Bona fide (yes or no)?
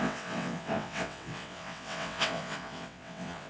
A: no